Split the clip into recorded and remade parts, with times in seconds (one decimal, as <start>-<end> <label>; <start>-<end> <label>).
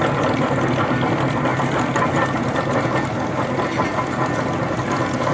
0.0-5.3 recorded